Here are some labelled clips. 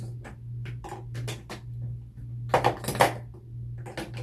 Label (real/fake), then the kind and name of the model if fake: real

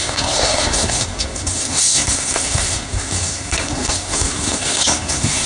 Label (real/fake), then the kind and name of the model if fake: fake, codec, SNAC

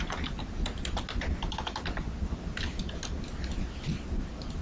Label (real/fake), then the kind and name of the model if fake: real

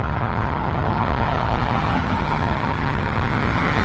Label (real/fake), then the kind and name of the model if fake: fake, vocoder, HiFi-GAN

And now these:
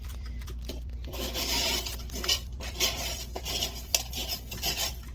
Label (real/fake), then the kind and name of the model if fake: fake, vocoder, BigVGAN v2